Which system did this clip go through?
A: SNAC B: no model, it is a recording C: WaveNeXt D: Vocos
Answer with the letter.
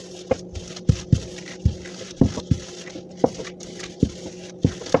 B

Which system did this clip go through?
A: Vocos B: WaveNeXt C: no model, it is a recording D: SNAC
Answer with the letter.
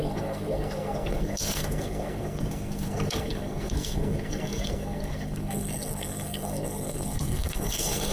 D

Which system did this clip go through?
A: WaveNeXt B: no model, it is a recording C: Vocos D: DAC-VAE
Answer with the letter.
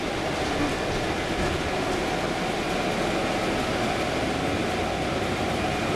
B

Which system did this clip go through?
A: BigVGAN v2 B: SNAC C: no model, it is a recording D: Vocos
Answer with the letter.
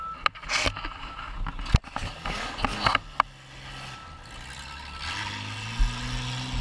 C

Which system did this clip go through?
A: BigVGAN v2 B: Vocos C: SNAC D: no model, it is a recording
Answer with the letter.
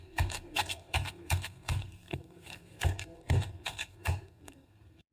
C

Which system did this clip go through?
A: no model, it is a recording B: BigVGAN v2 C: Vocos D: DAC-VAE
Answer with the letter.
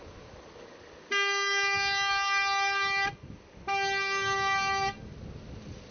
A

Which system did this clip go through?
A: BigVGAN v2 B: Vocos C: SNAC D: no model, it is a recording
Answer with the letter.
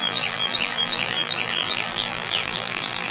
A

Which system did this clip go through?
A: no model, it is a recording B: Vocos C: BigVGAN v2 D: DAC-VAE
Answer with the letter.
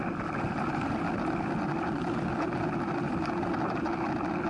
A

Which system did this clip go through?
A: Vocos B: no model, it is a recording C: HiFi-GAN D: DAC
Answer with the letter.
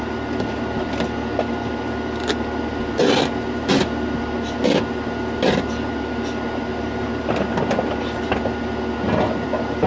B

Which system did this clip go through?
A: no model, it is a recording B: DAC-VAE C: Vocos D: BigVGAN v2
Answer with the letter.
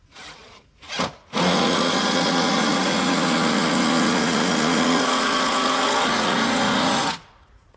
C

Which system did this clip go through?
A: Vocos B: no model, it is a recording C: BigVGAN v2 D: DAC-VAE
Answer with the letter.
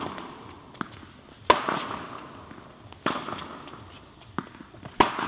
B